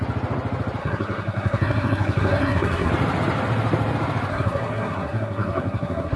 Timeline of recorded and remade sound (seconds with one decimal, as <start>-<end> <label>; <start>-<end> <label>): 0.0-0.8 recorded; 0.8-2.9 remade; 2.9-4.3 recorded; 4.3-6.2 remade